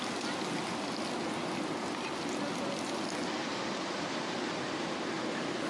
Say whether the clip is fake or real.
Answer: real